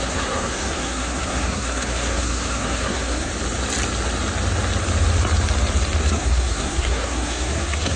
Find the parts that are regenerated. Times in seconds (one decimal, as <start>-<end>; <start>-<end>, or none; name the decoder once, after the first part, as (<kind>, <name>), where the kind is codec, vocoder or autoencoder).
0.0-3.3 (codec, SNAC); 6.0-8.0